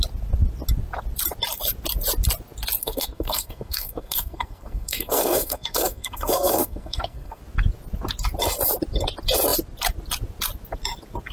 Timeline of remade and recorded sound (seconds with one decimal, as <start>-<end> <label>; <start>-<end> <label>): 0.0-2.8 recorded; 2.8-7.4 remade; 7.4-11.3 recorded